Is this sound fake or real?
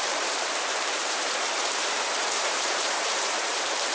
fake